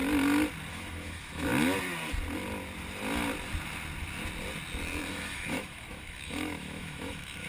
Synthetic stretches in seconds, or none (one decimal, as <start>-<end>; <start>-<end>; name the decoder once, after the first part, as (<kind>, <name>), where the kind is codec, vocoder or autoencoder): 0.7-1.5 (autoencoder, DAC-VAE); 5.1-7.5